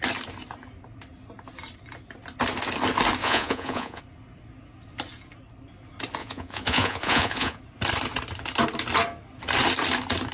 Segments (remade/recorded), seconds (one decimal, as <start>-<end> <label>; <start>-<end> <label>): 0.0-3.2 recorded; 3.2-4.0 remade; 4.0-6.2 recorded; 6.2-7.6 remade; 7.6-10.3 recorded